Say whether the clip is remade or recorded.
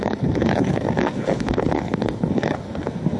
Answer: remade